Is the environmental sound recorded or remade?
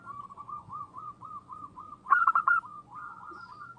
remade